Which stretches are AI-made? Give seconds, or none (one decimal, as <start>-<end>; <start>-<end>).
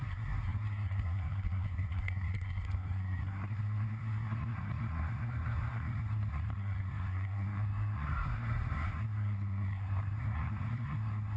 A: 0.0-11.4